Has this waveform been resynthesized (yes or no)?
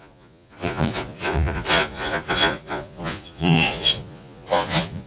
yes